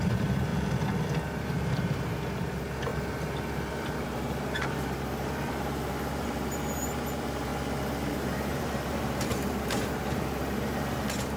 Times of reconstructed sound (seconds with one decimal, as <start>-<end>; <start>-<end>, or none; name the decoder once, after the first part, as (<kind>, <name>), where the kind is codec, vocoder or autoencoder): 0.0-0.5 (vocoder, BigVGAN v2); 1.3-2.9; 3.7-7.5; 8.1-11.4